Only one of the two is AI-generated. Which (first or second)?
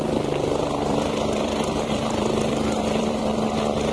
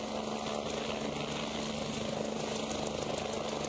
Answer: first